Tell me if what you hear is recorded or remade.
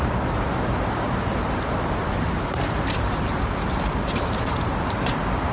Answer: remade